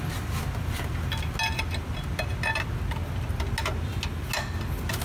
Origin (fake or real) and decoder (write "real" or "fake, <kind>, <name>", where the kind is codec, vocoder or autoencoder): real